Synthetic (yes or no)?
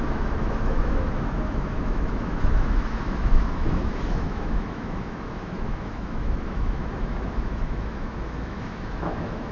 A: yes